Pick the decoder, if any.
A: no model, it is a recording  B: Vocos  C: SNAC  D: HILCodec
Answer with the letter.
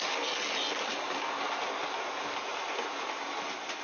A